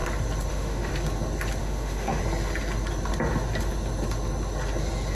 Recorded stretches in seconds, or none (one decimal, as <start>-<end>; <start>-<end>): 0.0-0.5; 0.9-1.6; 2.2-5.1